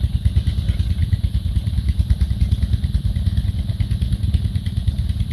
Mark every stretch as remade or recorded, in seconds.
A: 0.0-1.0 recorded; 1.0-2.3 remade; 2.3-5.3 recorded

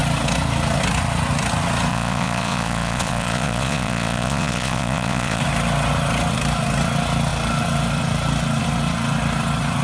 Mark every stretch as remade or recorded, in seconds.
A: 0.0-1.9 recorded; 1.9-5.4 remade; 5.4-9.8 recorded

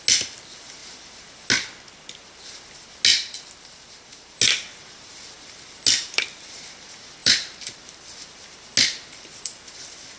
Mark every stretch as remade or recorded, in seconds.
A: 0.0-3.1 recorded; 3.1-4.4 remade; 4.4-7.2 recorded; 7.2-7.8 remade; 7.8-10.2 recorded

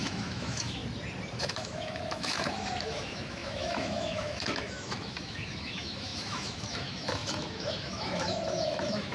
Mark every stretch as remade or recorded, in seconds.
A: 0.0-0.8 remade; 0.8-1.4 recorded; 1.4-9.1 remade

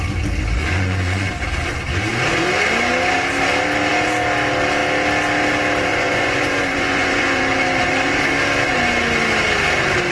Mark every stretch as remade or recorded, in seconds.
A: 0.0-0.6 recorded; 0.6-1.3 remade; 1.3-5.9 recorded; 5.9-7.4 remade; 7.4-10.1 recorded

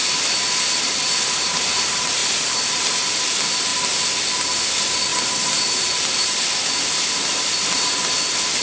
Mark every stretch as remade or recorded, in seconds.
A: 0.0-2.2 recorded; 2.2-3.0 remade; 3.0-3.7 recorded; 3.7-4.3 remade; 4.3-5.1 recorded; 5.1-7.9 remade; 7.9-8.6 recorded

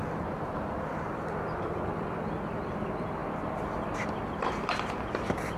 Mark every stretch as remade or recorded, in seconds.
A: 0.0-5.6 recorded

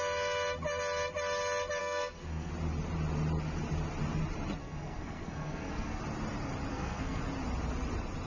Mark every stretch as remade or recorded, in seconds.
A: 0.0-1.8 recorded; 1.8-2.5 remade; 2.5-4.6 recorded; 4.6-6.0 remade; 6.0-6.7 recorded; 6.7-7.2 remade; 7.2-8.3 recorded